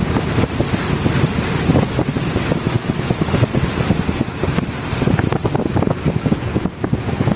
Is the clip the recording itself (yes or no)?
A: yes